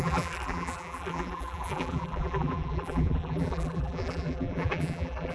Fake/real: fake